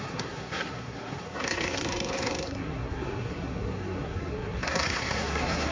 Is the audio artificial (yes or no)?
yes